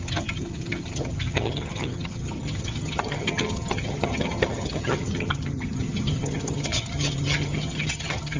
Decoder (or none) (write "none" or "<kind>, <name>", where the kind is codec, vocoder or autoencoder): vocoder, HiFi-GAN